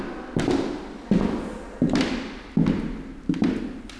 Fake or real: real